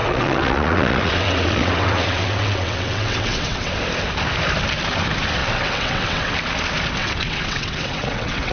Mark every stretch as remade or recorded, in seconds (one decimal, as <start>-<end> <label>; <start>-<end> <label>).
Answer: 0.0-3.7 remade; 3.7-5.4 recorded; 5.4-6.3 remade; 6.3-7.0 recorded; 7.0-8.5 remade